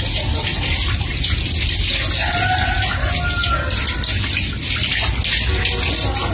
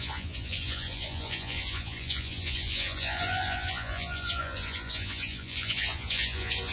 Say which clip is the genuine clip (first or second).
first